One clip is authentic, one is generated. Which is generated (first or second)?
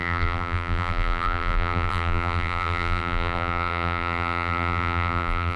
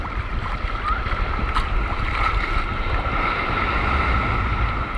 first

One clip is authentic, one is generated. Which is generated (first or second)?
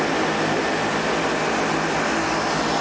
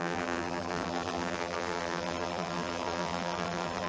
second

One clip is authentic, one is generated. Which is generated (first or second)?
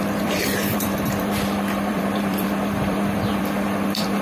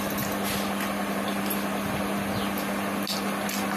first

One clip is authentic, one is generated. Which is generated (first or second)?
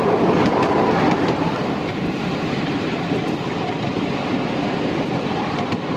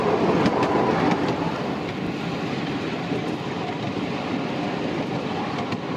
first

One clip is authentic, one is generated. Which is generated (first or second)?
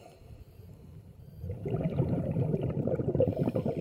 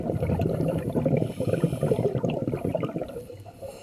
first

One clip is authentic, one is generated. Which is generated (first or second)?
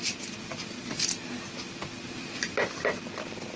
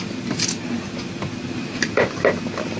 second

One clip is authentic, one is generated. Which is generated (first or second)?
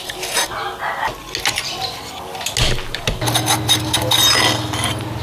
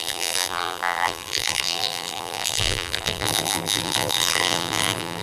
second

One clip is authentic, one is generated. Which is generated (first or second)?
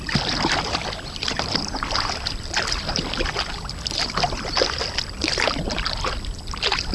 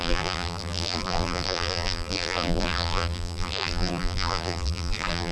second